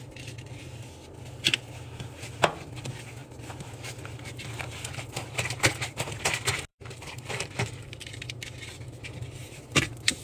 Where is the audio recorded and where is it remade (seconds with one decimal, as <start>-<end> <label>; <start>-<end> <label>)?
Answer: 0.0-6.7 recorded; 6.7-9.0 remade; 9.0-9.4 recorded; 9.4-10.2 remade